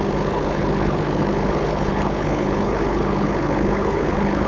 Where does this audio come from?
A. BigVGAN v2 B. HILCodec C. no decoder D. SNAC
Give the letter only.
B